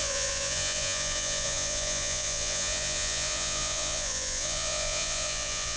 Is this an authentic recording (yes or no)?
no